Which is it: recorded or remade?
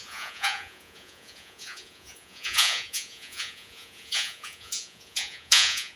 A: remade